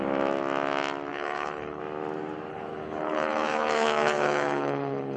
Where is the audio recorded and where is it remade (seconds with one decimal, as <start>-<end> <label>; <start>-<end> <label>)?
0.0-1.1 recorded; 1.1-1.8 remade; 1.8-2.5 recorded; 2.5-5.2 remade